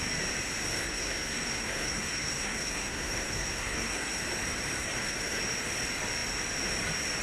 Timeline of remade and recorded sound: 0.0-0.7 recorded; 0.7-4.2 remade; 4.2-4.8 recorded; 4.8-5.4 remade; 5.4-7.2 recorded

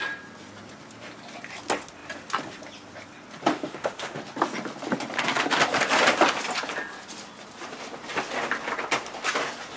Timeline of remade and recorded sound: 0.0-3.5 recorded; 3.5-4.2 remade; 4.2-9.8 recorded

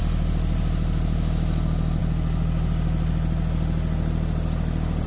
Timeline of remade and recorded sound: 0.0-5.1 recorded